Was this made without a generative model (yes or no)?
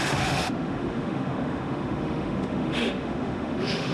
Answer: no